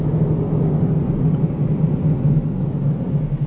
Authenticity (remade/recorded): recorded